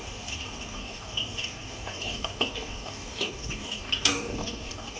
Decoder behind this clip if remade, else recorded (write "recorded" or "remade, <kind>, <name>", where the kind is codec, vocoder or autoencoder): remade, codec, DAC